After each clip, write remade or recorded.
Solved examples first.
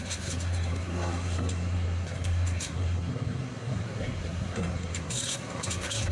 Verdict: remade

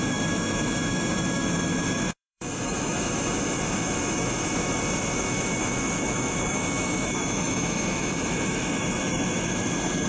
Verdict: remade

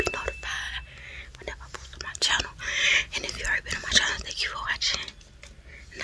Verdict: recorded